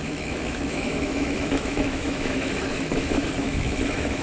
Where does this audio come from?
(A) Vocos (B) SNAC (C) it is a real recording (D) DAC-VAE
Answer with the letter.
D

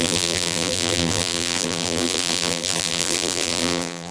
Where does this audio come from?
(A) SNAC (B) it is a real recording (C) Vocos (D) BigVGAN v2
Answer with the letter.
D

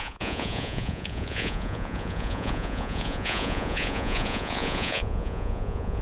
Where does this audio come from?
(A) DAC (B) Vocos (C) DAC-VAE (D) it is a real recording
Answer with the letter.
B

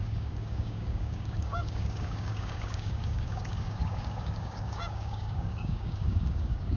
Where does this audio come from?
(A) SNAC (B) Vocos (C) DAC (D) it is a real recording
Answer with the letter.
C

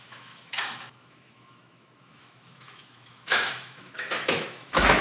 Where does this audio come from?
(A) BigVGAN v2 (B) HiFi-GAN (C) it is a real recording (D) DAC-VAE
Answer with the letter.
D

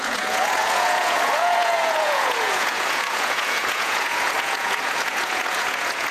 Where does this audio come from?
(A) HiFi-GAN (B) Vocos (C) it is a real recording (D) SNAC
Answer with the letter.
B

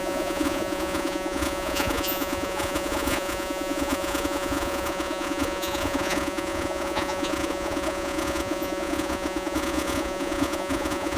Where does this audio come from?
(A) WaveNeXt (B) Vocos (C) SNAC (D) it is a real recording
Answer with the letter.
B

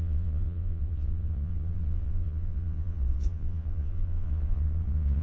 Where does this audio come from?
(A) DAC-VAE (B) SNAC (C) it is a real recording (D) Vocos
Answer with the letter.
D